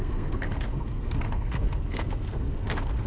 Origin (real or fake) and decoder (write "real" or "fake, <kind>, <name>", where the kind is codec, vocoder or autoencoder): fake, codec, SNAC